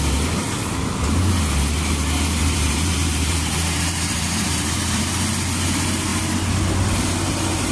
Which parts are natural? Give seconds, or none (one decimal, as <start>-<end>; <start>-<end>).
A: 0.0-2.4; 5.1-7.7